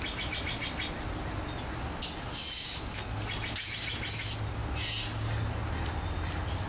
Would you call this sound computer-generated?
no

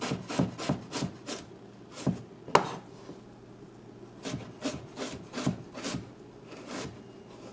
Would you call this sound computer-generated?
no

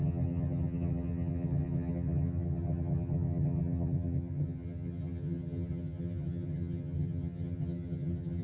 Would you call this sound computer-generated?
yes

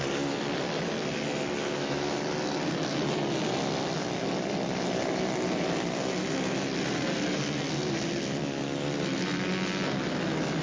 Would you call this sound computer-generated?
no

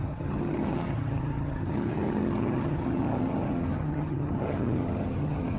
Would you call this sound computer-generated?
yes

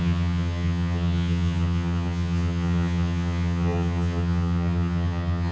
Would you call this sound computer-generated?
yes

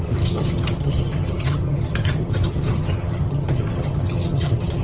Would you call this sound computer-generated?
yes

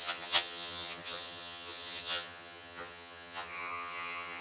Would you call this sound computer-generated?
yes